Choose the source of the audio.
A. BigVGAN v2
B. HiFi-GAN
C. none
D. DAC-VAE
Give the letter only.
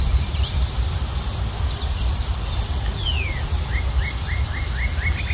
C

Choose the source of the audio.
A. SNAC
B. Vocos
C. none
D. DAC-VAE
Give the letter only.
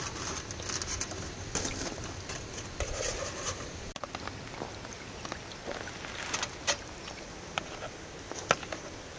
C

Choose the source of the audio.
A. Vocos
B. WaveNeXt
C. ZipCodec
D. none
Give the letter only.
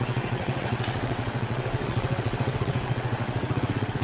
B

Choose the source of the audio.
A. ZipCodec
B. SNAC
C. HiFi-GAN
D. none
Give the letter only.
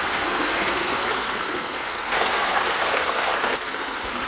B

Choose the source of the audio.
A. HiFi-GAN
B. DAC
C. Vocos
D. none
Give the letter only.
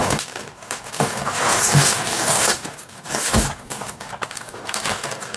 B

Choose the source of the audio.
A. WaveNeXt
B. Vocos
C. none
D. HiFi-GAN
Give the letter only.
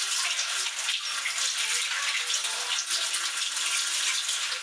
C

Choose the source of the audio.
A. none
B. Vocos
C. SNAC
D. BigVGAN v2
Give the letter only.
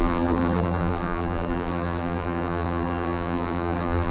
D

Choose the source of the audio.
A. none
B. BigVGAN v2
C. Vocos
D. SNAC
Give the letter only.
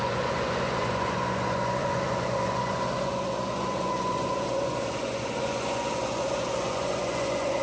C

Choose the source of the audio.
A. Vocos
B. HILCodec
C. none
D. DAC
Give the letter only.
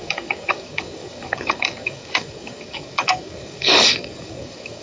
D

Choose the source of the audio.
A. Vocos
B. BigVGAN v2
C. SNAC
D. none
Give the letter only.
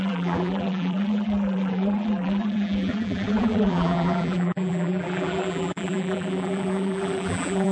B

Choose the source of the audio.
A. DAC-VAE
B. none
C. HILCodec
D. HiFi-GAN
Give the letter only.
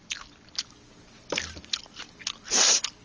B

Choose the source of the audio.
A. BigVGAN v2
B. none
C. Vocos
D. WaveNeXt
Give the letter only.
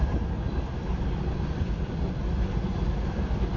A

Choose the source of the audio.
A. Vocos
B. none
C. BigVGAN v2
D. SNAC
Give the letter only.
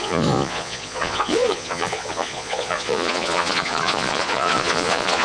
A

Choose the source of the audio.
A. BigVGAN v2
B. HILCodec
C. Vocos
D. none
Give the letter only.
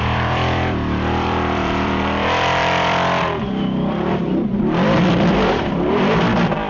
A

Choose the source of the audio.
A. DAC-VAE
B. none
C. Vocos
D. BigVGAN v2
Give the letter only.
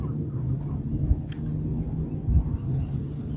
B